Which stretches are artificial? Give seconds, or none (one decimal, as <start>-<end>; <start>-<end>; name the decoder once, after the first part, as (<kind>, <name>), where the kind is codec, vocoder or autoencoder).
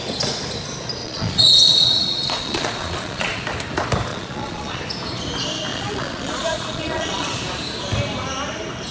1.0-3.4 (vocoder, Vocos); 4.1-4.8; 5.7-7.4